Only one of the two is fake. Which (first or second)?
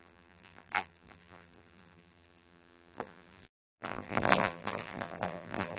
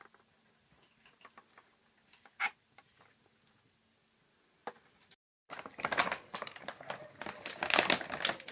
first